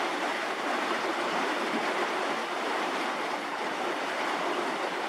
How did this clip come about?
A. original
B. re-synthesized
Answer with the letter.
B